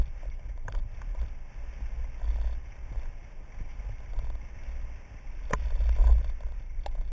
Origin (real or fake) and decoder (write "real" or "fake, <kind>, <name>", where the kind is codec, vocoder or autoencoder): real